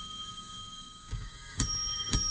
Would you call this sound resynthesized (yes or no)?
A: yes